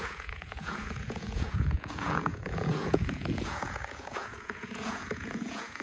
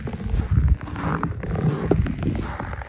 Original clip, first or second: second